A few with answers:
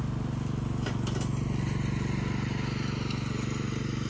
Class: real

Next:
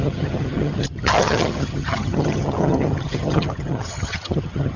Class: fake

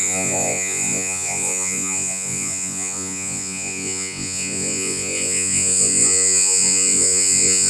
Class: fake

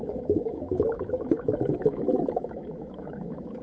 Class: fake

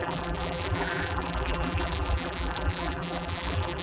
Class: fake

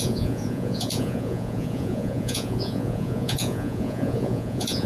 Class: fake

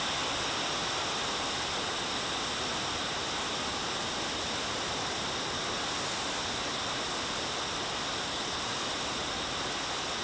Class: real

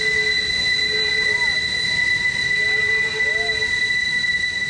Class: real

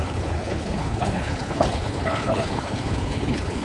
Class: fake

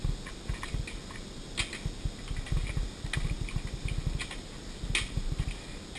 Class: real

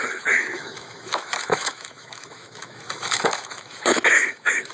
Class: fake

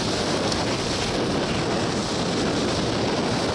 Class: real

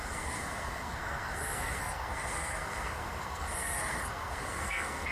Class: fake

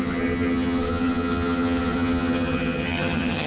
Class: fake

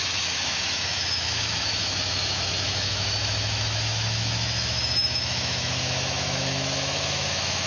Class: fake